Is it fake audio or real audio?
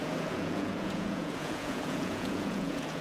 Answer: fake